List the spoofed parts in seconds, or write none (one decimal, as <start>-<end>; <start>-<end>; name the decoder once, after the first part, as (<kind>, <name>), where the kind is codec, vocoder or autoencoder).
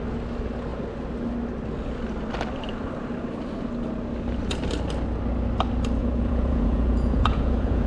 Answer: 6.0-7.9 (vocoder, Vocos)